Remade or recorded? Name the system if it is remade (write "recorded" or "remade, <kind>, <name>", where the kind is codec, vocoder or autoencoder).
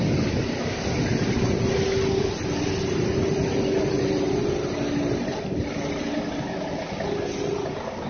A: recorded